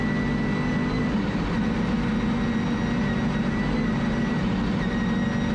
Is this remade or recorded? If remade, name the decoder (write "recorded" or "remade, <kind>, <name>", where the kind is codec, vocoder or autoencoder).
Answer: recorded